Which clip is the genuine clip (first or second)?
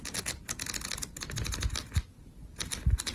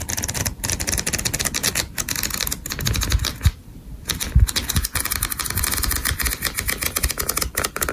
first